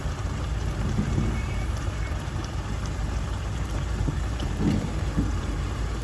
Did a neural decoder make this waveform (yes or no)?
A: yes